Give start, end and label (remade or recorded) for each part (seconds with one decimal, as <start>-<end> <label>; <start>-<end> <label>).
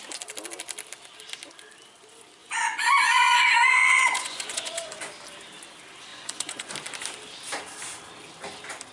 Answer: 0.0-2.4 recorded; 2.4-5.1 remade; 5.1-6.1 recorded; 6.1-6.7 remade; 6.7-8.9 recorded